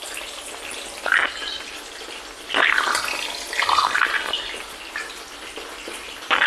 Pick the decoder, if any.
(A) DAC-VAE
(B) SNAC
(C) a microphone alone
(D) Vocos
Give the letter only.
C